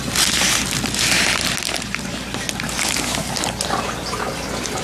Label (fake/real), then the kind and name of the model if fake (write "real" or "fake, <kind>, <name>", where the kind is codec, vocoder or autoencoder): real